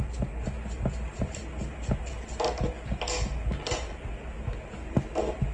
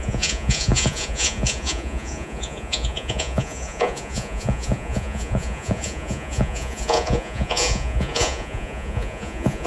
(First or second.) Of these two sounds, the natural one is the first